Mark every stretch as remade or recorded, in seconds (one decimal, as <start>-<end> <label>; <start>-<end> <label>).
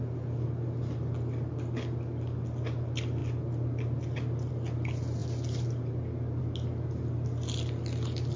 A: 0.0-8.4 recorded